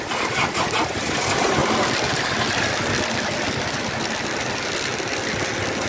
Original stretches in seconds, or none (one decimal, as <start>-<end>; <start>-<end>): 0.0-5.9